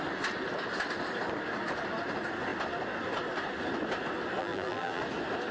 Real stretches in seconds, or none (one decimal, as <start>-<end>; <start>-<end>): 0.0-4.4; 5.0-5.5